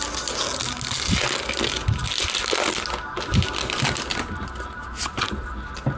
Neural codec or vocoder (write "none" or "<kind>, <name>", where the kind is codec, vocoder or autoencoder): none